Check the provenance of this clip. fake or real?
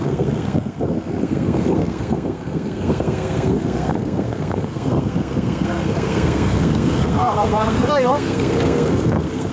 fake